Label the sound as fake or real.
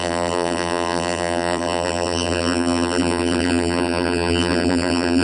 fake